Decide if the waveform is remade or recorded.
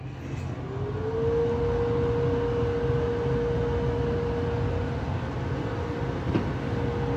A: recorded